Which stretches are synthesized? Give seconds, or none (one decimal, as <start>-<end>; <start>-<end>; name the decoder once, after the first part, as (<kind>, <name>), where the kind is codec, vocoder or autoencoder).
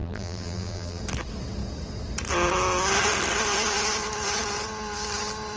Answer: 0.0-1.0 (vocoder, BigVGAN v2)